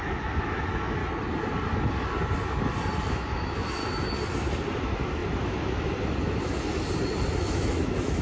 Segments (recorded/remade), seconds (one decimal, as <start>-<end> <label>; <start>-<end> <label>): 0.0-1.0 remade; 1.0-3.1 recorded; 3.1-3.8 remade; 3.8-4.8 recorded; 4.8-6.7 remade; 6.7-7.3 recorded; 7.3-8.2 remade